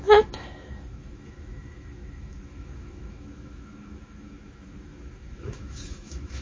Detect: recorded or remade remade